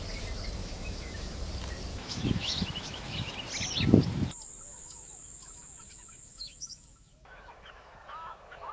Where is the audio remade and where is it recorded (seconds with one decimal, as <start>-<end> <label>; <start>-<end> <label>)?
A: 0.0-0.6 recorded; 0.6-1.4 remade; 1.4-1.9 recorded; 1.9-3.3 remade; 3.3-4.7 recorded; 4.7-8.7 remade

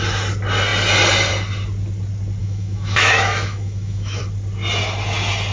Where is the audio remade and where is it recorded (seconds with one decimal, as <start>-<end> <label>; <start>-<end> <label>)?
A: 0.0-2.4 recorded; 2.4-4.2 remade; 4.2-5.5 recorded

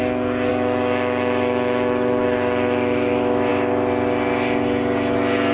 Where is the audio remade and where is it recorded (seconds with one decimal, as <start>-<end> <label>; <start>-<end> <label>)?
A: 0.0-0.5 recorded; 0.5-3.5 remade; 3.5-5.5 recorded

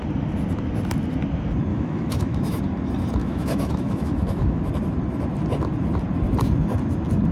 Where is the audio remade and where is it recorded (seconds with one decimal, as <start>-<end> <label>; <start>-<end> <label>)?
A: 0.0-1.7 recorded; 1.7-2.6 remade; 2.6-3.2 recorded; 3.2-4.6 remade; 4.6-7.3 recorded

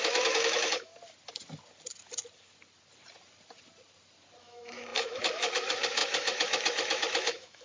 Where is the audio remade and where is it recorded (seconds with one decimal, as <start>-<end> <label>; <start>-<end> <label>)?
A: 0.0-0.9 remade; 0.9-4.4 recorded; 4.4-7.6 remade

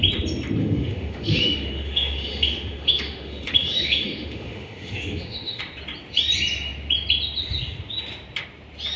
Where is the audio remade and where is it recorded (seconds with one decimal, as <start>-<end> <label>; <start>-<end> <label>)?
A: 0.0-0.6 recorded; 0.6-5.6 remade; 5.6-9.0 recorded